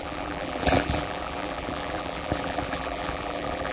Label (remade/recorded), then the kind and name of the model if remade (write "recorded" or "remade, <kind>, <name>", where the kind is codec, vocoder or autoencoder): remade, vocoder, BigVGAN v2